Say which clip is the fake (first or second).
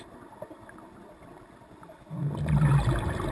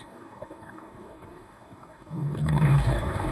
second